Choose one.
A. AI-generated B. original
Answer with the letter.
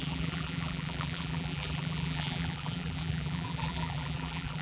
A